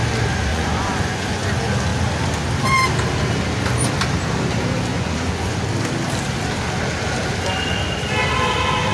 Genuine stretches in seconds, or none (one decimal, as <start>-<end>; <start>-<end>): 0.0-0.5; 1.5-4.9; 5.6-8.9